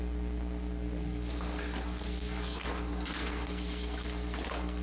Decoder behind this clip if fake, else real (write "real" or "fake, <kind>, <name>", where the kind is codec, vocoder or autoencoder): fake, codec, SNAC